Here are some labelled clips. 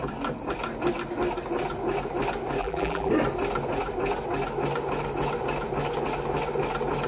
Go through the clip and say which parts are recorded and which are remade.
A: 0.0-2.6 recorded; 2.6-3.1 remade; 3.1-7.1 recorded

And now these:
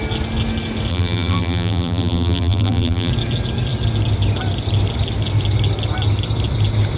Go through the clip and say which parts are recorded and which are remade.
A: 0.0-0.9 recorded; 0.9-3.1 remade; 3.1-7.0 recorded

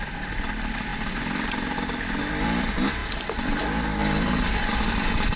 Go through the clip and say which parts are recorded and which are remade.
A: 0.0-3.0 recorded; 3.0-3.6 remade; 3.6-4.0 recorded; 4.0-5.4 remade

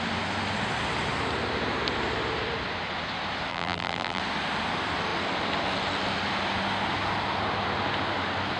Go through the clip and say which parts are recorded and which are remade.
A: 0.0-3.5 recorded; 3.5-4.2 remade; 4.2-8.6 recorded